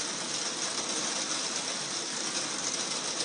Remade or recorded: recorded